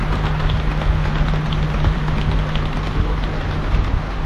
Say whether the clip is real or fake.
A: real